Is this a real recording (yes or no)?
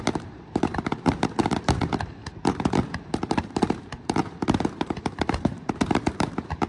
no